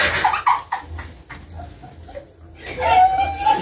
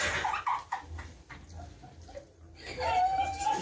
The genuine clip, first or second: first